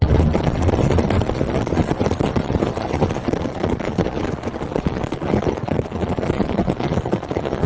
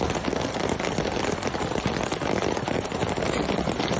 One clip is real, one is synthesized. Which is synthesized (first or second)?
first